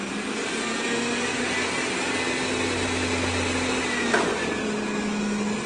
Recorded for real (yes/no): yes